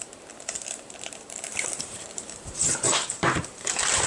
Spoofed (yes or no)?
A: yes